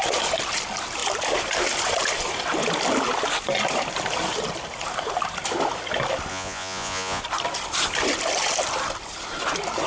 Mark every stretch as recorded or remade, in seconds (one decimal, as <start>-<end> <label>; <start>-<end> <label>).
0.0-6.3 recorded; 6.3-7.2 remade; 7.2-9.9 recorded